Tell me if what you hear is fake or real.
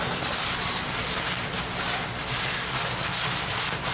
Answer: real